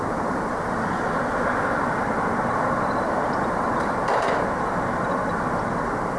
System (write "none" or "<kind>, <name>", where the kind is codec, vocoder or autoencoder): none